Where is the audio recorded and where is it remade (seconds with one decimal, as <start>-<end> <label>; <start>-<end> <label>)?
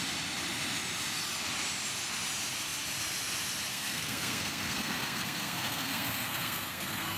0.0-3.7 recorded; 3.7-7.2 remade